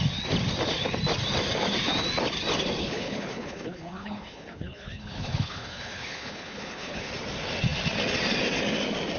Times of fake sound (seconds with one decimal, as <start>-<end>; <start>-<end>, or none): 2.8-7.1